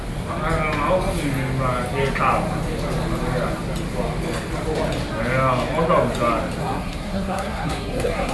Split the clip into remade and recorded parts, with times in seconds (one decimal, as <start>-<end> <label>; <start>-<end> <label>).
0.0-6.6 recorded; 6.6-8.3 remade